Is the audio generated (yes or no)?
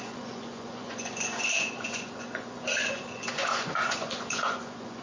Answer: yes